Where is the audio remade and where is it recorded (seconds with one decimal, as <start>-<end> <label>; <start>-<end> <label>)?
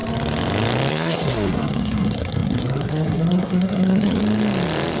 0.0-0.9 recorded; 0.9-4.2 remade; 4.2-5.0 recorded